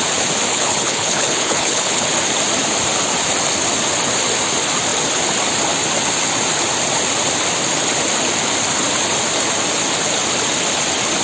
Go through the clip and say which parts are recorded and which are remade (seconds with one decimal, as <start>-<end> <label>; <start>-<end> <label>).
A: 0.0-0.5 recorded; 0.5-2.1 remade; 2.1-11.2 recorded